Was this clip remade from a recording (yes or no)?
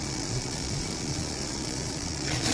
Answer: yes